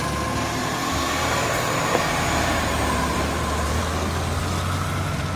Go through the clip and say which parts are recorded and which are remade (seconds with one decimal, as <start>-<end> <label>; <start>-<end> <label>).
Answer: 0.0-0.6 recorded; 0.6-3.8 remade; 3.8-5.4 recorded